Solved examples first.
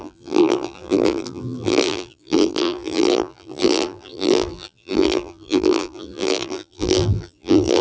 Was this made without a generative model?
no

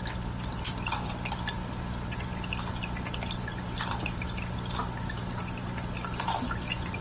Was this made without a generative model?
yes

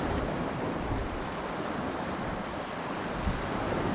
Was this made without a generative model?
no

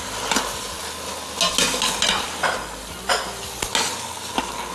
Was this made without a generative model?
yes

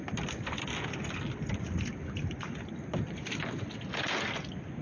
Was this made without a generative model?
yes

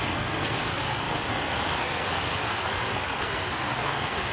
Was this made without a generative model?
no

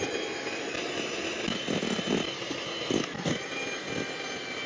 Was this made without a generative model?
yes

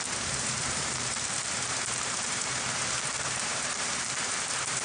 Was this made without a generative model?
no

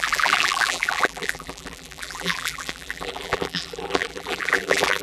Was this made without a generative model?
no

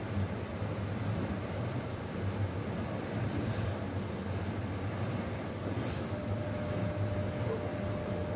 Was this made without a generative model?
yes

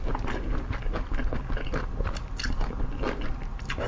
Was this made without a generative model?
yes